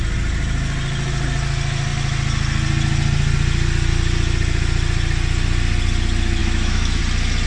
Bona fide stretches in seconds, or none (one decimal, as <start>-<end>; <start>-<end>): 0.0-6.4; 7.0-7.5